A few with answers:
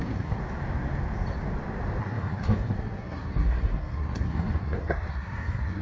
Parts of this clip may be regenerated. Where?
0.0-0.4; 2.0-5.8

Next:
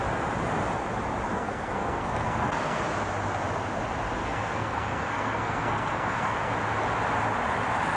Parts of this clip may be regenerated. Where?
1.3-2.8; 4.2-6.5

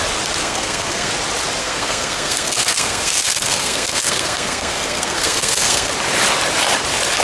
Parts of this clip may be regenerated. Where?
0.4-1.1; 1.6-5.9

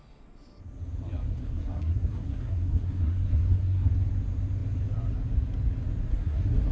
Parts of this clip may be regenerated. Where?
1.3-3.9; 6.1-6.7

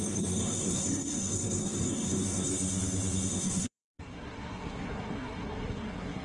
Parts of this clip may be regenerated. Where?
0.0-2.5; 3.3-6.2

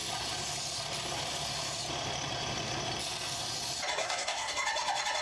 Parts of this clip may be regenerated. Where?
4.0-4.5

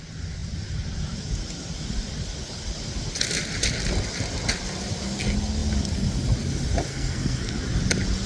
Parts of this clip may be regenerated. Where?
6.9-7.6

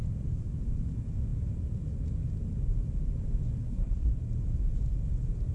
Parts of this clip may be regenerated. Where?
3.6-4.1